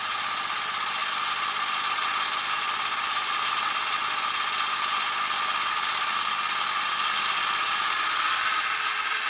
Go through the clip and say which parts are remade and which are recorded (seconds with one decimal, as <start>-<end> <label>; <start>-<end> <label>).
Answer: 0.0-9.3 recorded